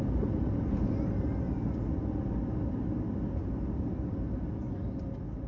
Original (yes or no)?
yes